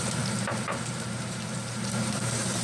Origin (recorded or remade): remade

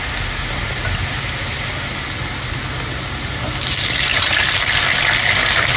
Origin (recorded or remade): recorded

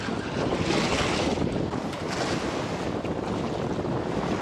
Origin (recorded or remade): recorded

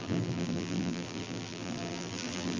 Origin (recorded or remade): remade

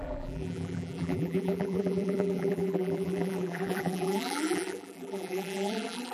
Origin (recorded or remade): remade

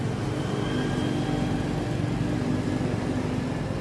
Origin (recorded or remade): recorded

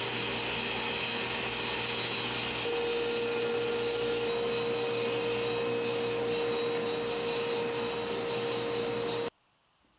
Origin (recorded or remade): recorded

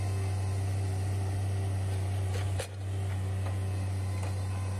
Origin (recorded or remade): recorded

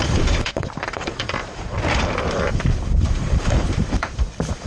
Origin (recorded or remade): remade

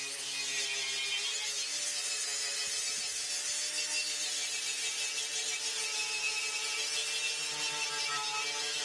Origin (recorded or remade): recorded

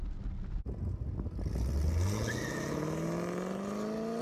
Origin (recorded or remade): recorded